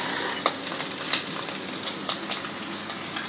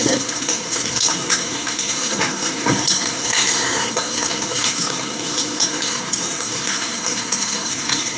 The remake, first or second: second